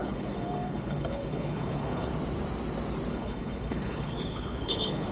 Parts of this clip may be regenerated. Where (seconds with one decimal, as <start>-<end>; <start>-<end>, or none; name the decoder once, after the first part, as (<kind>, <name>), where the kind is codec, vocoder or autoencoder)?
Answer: 0.0-2.1 (codec, HILCodec); 3.1-5.1